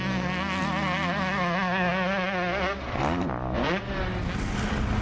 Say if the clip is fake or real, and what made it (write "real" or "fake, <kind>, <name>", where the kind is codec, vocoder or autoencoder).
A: real